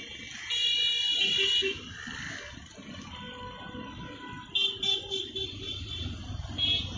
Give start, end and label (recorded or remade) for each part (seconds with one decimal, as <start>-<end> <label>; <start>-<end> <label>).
0.0-7.0 recorded

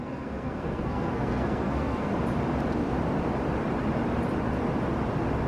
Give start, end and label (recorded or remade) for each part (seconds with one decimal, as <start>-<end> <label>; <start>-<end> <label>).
0.0-2.1 remade; 2.1-5.5 recorded

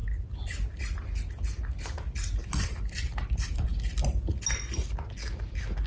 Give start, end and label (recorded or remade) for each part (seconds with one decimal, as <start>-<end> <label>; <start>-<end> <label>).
0.0-5.9 recorded

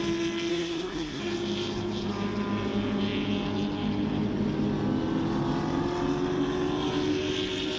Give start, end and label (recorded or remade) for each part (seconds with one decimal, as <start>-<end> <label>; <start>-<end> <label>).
0.0-0.5 recorded; 0.5-1.2 remade; 1.2-7.8 recorded

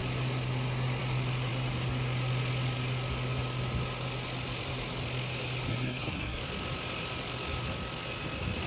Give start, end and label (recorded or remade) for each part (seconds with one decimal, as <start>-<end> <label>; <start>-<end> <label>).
0.0-5.7 recorded; 5.7-6.4 remade; 6.4-8.7 recorded

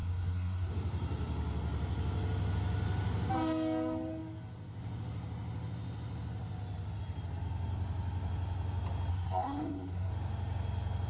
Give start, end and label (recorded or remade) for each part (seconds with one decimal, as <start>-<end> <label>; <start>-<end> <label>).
0.0-0.7 remade; 0.7-9.1 recorded; 9.1-10.1 remade; 10.1-11.1 recorded

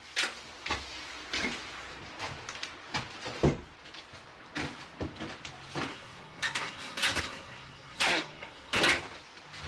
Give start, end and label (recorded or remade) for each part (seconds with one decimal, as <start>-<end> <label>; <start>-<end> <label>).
0.0-5.9 recorded; 5.9-8.8 remade; 8.8-9.7 recorded

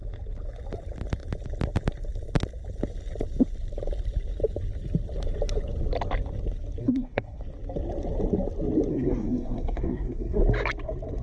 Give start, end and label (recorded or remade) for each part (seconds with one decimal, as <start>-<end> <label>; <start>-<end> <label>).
0.0-6.8 recorded; 6.8-7.4 remade; 7.4-8.9 recorded; 8.9-10.4 remade; 10.4-11.2 recorded